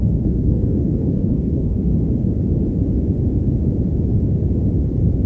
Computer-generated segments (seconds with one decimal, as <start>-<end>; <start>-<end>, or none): 0.0-1.9